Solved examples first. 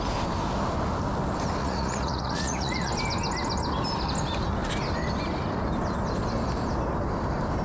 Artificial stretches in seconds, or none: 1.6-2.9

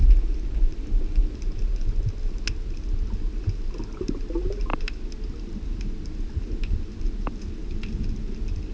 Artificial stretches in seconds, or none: none

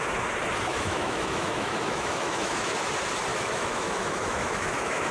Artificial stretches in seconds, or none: 0.7-2.7; 3.3-5.1

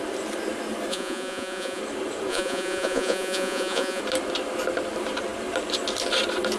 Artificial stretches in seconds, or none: 0.9-1.8; 2.3-4.0

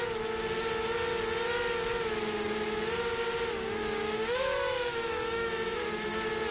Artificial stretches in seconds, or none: 3.8-5.9

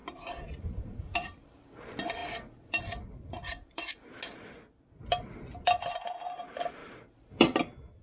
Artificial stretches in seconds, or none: 0.0-1.8; 6.8-7.6

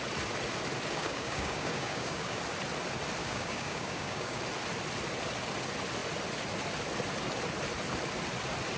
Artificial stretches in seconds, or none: 1.0-2.4; 3.2-4.4

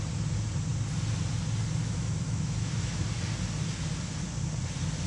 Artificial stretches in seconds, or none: 1.8-3.0